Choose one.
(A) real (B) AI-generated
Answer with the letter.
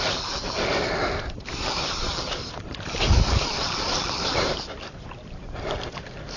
B